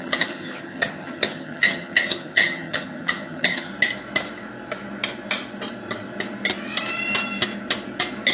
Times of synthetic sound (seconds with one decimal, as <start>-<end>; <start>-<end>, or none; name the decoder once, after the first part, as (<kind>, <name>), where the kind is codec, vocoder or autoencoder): 0.0-3.7 (vocoder, HiFi-GAN)